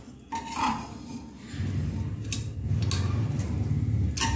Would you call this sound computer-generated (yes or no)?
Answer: no